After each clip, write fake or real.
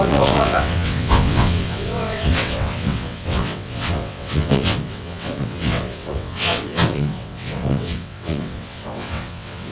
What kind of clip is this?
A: fake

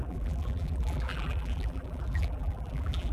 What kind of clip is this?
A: fake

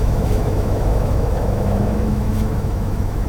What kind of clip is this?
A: fake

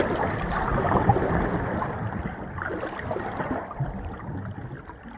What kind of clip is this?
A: real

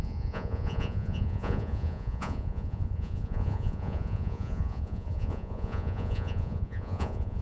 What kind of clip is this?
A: fake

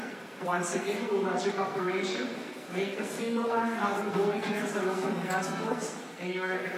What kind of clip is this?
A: fake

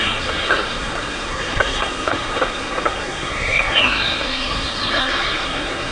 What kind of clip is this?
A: fake